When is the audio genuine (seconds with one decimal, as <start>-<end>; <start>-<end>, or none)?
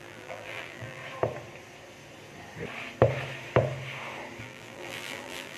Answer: 1.0-4.4